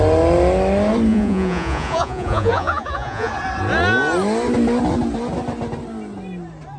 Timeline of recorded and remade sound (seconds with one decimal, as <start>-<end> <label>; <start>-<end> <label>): 0.0-1.1 recorded; 1.1-3.3 remade; 3.3-6.8 recorded